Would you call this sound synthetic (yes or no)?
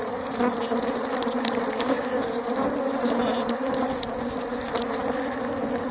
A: no